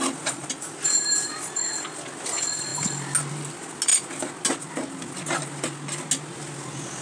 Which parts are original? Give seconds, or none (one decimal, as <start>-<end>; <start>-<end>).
0.0-0.4; 1.3-7.0